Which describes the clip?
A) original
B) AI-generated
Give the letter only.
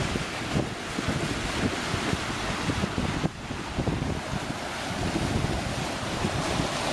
A